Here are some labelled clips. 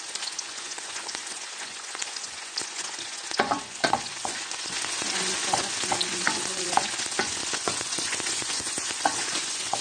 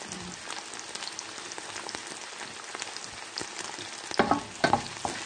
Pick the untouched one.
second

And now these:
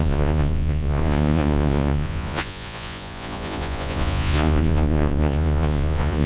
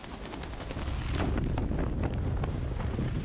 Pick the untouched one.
second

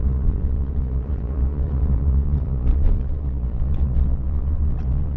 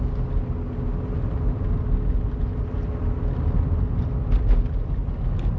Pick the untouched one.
second